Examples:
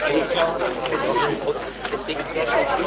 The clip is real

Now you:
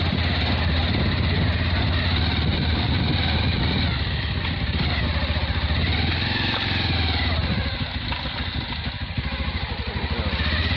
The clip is real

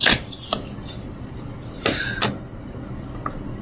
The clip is real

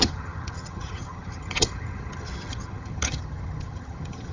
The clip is fake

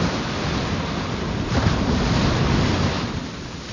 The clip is real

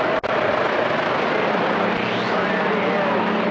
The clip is real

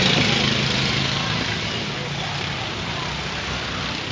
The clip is real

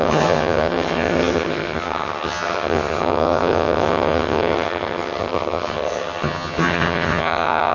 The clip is fake